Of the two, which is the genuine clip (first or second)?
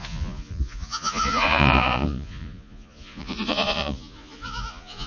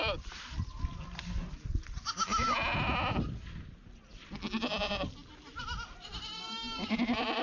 second